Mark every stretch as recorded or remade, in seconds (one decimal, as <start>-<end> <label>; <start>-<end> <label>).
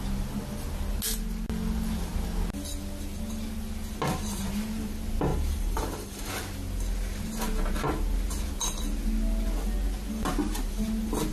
0.0-5.3 recorded; 5.3-6.3 remade; 6.3-11.3 recorded